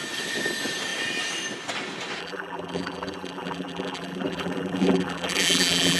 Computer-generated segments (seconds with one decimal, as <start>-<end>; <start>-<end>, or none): 2.2-6.0